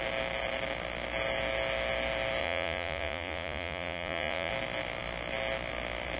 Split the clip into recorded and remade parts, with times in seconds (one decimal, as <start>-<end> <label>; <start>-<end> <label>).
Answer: 0.0-2.4 recorded; 2.4-4.5 remade; 4.5-6.2 recorded